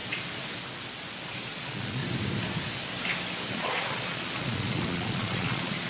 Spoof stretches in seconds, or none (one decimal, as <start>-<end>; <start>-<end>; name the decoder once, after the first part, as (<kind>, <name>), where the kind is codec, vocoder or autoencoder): 1.5-2.0 (vocoder, Vocos); 3.5-5.9